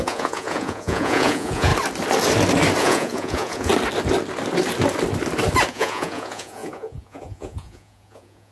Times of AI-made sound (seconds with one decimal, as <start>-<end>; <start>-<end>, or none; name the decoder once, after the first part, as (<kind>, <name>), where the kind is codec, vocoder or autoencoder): 0.0-1.7 (vocoder, Vocos); 2.8-3.7; 5.7-8.5